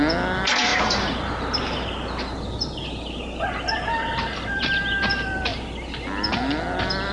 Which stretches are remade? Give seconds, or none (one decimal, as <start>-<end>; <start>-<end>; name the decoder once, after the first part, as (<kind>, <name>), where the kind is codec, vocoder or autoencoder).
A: 0.7-5.0 (vocoder, BigVGAN v2)